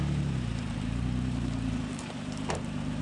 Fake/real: fake